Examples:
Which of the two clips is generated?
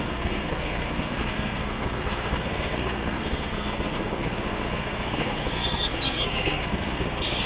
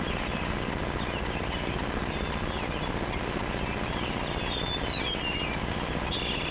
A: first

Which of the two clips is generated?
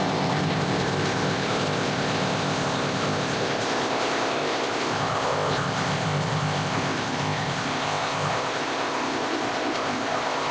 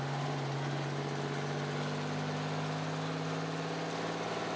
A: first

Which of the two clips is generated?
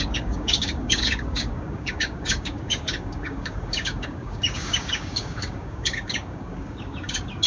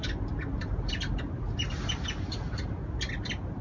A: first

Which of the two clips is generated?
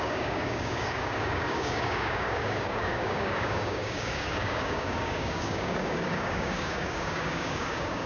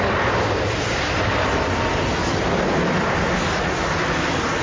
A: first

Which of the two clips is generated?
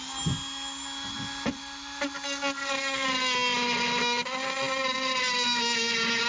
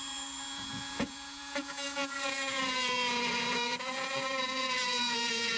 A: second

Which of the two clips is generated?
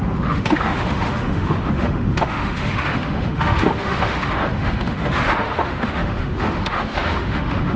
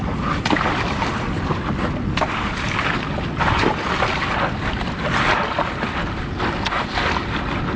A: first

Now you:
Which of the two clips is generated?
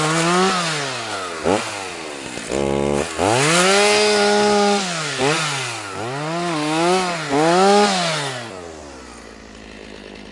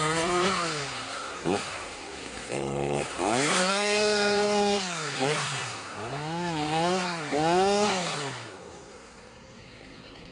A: second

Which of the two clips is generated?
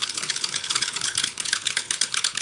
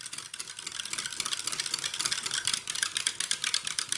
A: first